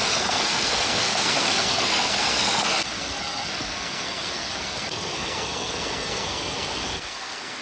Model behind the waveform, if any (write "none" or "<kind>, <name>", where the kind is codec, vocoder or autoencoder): codec, SNAC